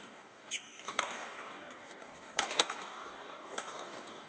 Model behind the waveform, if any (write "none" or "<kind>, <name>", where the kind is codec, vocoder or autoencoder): codec, DAC